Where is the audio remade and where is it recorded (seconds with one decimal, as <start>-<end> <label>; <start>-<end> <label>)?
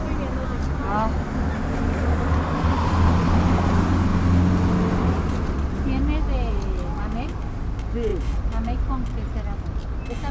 0.0-10.3 recorded